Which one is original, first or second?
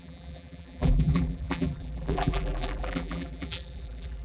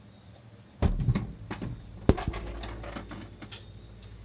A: second